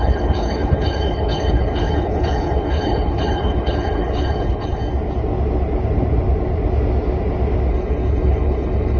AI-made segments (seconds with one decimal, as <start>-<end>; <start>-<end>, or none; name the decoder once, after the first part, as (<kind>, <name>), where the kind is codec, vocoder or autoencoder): 0.0-4.8 (codec, HILCodec); 7.7-9.0